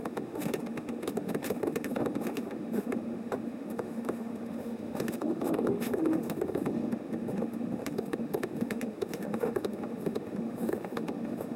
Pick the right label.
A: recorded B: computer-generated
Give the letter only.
B